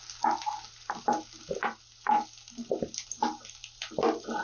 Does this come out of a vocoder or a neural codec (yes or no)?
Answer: no